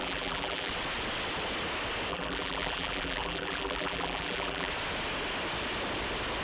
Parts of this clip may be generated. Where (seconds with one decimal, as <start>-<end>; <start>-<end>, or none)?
0.0-0.7; 2.1-4.7

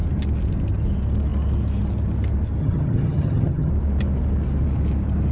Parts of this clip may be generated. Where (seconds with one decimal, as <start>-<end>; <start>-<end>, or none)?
2.6-3.7

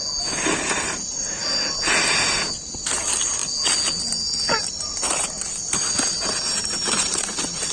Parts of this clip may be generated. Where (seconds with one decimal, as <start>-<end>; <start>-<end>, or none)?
none

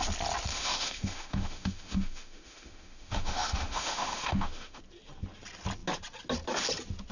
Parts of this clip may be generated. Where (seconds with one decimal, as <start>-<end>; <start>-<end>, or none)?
0.5-4.8

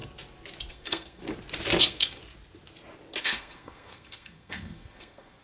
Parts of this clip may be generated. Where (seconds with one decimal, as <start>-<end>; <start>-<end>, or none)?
0.7-1.2; 1.8-2.2; 3.2-5.4

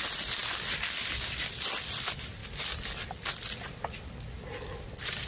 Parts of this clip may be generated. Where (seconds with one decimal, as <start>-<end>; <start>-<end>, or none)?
0.4-1.6

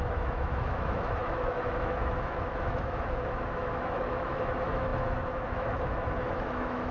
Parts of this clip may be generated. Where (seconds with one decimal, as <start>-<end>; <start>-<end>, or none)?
0.0-6.9